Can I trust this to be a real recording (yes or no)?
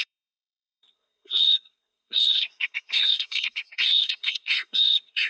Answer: no